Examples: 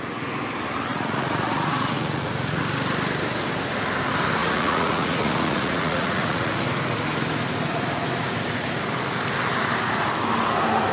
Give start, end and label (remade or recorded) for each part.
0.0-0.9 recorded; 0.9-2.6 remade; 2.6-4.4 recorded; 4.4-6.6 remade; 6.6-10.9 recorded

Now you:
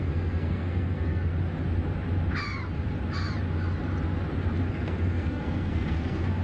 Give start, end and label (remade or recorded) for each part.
0.0-1.3 remade; 1.3-4.7 recorded; 4.7-6.4 remade

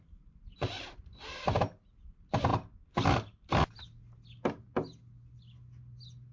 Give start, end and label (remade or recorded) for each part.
0.0-6.3 recorded

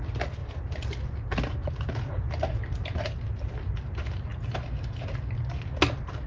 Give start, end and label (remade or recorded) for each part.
0.0-6.3 recorded

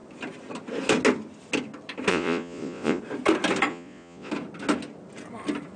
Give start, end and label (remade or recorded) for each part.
0.0-2.1 recorded; 2.1-3.0 remade; 3.0-3.7 recorded; 3.7-4.3 remade; 4.3-5.8 recorded

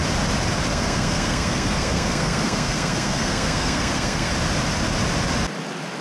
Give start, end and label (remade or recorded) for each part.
0.0-0.7 recorded; 0.7-4.3 remade; 4.3-6.0 recorded